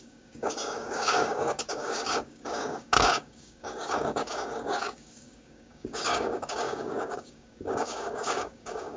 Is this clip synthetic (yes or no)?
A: yes